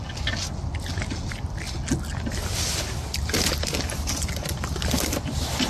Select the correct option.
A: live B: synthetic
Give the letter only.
A